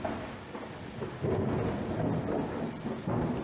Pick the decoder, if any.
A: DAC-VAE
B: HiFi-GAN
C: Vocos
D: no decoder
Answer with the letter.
D